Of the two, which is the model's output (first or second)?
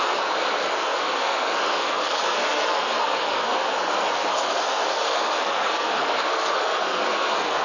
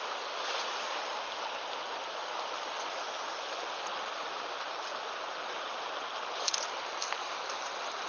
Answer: first